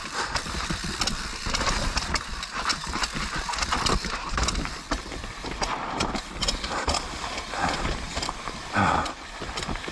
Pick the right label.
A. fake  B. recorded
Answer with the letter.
A